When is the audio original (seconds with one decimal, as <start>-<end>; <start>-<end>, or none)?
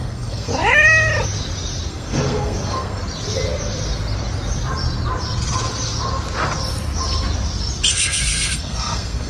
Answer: 0.5-1.9; 3.0-7.9